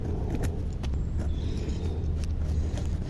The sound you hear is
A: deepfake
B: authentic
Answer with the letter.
B